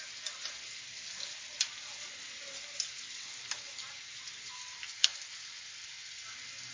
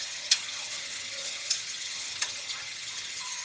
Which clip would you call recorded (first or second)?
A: first